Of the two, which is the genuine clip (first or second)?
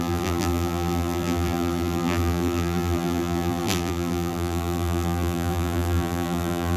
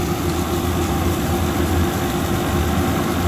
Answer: second